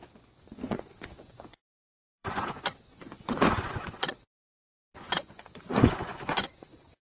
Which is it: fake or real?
fake